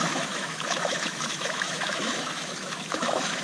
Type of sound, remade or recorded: remade